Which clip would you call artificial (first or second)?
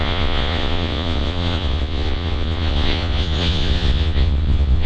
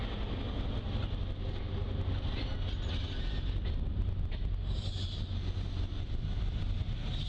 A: first